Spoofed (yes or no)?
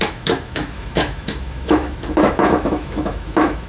yes